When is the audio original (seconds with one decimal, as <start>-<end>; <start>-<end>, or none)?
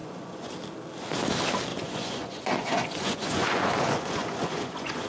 0.5-1.7